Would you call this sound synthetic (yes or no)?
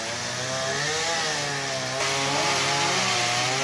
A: no